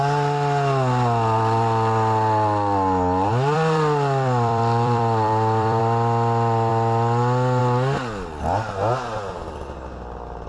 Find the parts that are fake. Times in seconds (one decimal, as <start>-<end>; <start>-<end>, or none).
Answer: 3.3-5.8

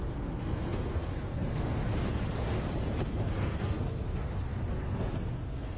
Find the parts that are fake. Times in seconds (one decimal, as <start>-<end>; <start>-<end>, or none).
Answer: 0.0-1.8; 3.3-5.8

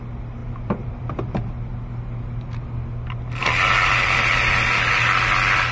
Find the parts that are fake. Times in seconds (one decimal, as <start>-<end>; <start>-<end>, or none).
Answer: 0.4-1.7; 3.4-4.3

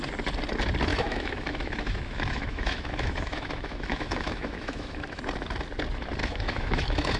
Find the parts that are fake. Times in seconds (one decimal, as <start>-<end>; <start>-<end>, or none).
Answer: 0.9-5.2; 6.2-7.2

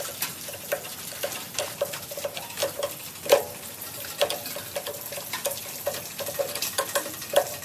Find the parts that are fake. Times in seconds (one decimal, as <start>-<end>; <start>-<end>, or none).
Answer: none

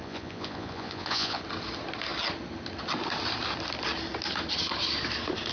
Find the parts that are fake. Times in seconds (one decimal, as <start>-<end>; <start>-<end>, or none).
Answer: 0.0-1.4

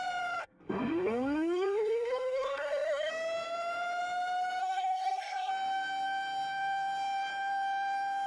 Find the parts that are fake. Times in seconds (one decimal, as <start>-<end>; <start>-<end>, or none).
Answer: 0.4-3.1; 4.6-5.5

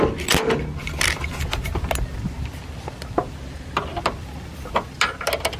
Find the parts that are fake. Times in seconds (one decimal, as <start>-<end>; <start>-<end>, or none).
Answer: none